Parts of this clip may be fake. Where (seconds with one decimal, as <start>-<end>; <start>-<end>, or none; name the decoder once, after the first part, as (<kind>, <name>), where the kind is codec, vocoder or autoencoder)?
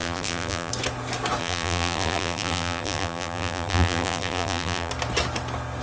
0.0-0.7 (vocoder, BigVGAN v2); 1.4-4.9